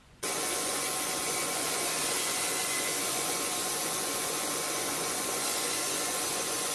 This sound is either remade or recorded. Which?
remade